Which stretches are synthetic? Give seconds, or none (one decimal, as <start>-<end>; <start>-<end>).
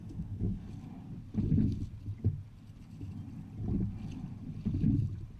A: 0.0-0.7